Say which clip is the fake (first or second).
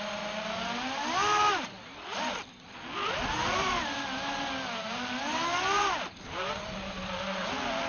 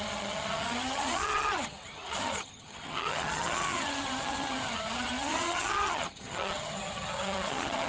second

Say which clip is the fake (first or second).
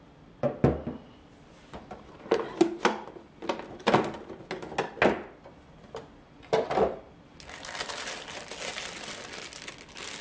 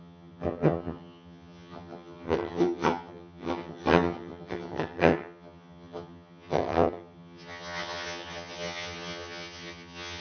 second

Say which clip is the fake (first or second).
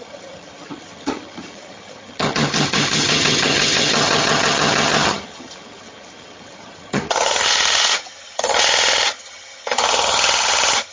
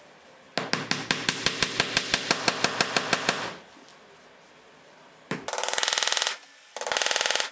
first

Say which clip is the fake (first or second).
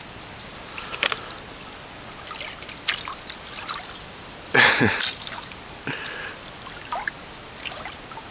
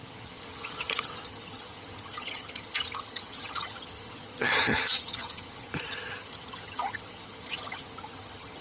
second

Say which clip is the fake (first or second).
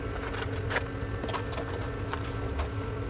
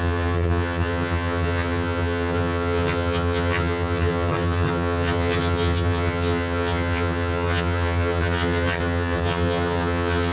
second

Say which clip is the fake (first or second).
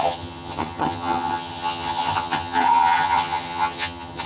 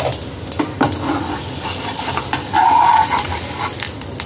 first